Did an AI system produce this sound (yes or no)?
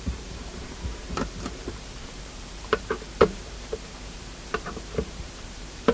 yes